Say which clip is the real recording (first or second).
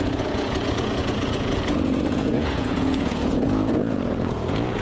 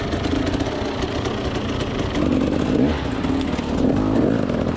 second